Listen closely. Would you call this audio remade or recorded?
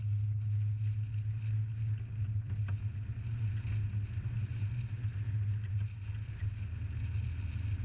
recorded